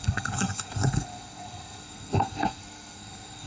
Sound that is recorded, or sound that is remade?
remade